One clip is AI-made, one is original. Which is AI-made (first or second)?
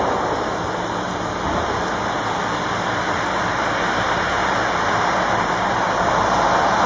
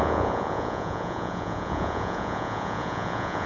second